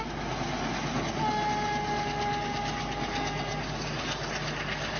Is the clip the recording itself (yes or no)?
yes